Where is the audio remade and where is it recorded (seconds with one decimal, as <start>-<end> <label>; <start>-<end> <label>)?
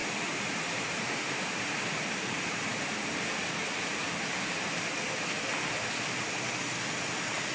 0.0-3.1 remade; 3.1-7.5 recorded